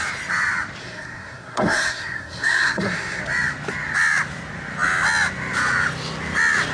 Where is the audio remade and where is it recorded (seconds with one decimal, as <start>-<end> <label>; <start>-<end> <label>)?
0.0-0.8 recorded; 0.8-3.2 remade; 3.2-6.7 recorded